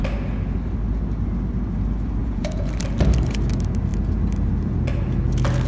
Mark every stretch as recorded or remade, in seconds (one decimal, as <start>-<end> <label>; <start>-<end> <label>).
0.0-2.2 recorded; 2.2-2.7 remade; 2.7-5.7 recorded